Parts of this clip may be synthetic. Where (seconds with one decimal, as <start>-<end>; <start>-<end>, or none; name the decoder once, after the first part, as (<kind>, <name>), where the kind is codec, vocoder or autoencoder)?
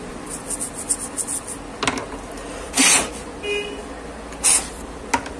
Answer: none